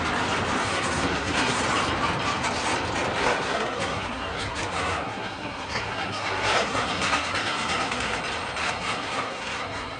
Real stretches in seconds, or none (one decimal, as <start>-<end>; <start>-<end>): 0.0-0.6; 1.6-3.2; 8.2-8.6